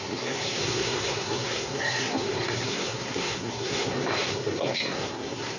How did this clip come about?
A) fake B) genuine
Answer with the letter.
A